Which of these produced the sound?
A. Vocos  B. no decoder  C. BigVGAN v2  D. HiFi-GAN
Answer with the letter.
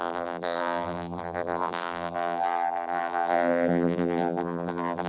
C